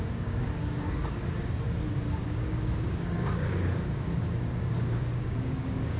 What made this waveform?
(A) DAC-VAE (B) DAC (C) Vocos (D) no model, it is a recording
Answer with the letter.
B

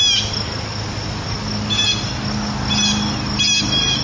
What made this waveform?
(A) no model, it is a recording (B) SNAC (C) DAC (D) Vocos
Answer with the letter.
A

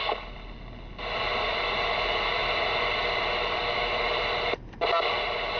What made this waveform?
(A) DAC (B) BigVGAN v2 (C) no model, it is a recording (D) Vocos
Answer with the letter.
C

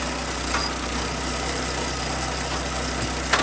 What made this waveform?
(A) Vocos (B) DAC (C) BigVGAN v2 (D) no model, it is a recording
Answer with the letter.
D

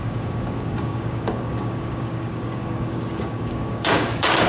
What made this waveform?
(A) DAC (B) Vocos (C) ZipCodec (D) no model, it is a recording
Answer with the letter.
A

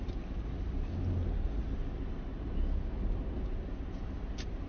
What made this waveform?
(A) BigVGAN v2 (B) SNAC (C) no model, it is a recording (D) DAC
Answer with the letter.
C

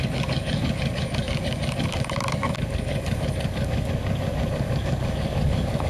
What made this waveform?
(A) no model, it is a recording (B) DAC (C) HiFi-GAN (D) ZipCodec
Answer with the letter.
B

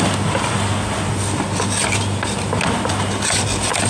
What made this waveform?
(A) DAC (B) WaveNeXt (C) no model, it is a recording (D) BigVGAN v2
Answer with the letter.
C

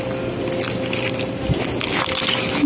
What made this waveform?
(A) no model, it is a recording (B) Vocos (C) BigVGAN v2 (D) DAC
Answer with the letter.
A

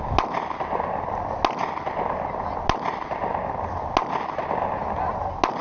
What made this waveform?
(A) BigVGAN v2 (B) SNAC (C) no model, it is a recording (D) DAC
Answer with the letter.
C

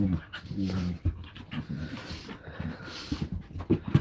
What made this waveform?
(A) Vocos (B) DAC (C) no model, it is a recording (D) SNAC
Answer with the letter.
C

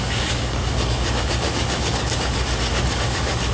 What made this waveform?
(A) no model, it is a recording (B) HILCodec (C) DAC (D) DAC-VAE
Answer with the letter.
C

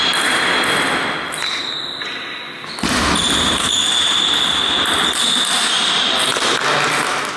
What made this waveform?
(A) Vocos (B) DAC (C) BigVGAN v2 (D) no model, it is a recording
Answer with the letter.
D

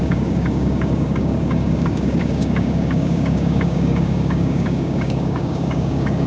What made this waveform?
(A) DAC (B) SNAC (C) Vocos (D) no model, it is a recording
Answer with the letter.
A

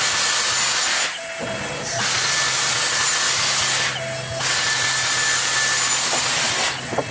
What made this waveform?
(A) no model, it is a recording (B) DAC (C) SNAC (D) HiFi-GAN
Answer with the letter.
A